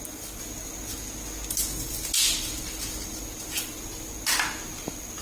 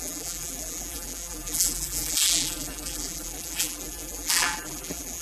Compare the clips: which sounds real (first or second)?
first